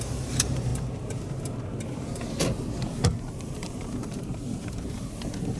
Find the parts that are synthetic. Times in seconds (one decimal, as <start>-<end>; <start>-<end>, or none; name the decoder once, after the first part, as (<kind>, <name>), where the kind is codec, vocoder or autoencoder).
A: 0.0-0.7 (vocoder, BigVGAN v2); 3.2-5.6